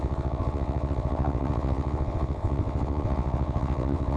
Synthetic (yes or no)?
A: yes